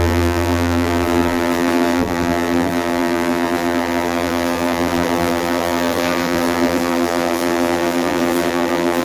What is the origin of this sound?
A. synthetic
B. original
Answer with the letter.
A